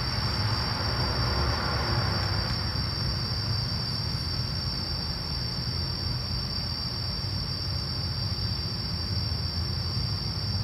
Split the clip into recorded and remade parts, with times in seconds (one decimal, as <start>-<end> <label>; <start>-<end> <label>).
0.0-10.6 recorded

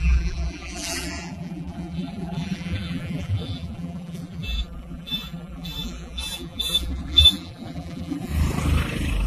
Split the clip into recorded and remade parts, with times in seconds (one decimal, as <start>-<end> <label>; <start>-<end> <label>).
0.0-8.3 remade; 8.3-9.3 recorded